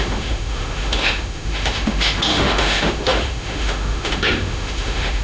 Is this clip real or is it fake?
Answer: fake